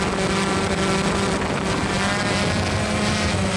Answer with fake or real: real